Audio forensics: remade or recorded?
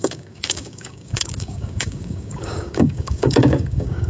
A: remade